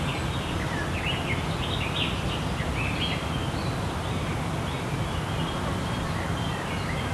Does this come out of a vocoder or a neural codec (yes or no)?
no